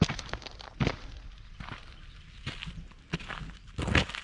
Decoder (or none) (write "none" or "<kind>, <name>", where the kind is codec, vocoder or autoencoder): none